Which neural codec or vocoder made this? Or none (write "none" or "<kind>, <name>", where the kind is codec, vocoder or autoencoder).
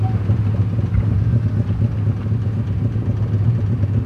none